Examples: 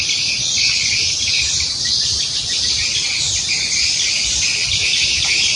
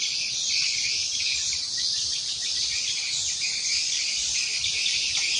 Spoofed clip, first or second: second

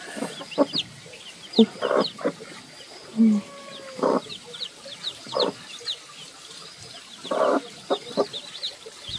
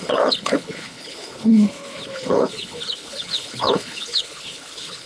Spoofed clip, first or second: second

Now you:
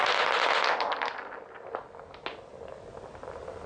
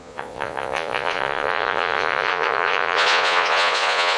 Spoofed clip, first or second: second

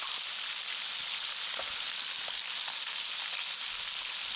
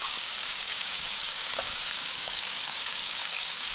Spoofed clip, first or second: second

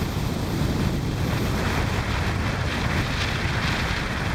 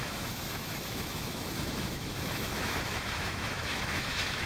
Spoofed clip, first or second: second